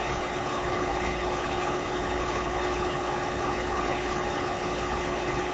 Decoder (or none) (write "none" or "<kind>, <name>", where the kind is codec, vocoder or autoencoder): codec, HILCodec